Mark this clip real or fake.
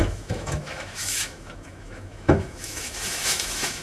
fake